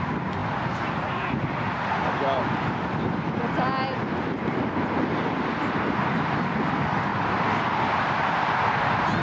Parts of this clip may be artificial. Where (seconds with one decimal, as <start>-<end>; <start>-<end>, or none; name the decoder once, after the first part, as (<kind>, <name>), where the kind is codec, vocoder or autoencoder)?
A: none